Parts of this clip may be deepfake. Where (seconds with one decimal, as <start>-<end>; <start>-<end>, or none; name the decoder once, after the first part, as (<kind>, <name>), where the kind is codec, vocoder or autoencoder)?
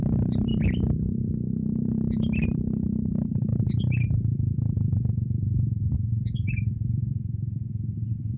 0.0-0.5 (vocoder, BigVGAN v2); 1.5-3.5